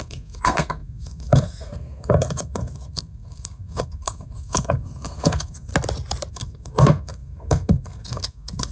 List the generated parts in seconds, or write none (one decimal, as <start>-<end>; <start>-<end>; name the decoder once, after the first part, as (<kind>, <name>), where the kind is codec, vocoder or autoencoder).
0.0-5.7 (codec, SNAC); 6.3-8.7